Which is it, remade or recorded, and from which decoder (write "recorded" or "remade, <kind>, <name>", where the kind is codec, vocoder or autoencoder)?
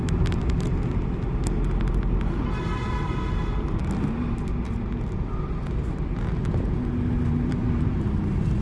recorded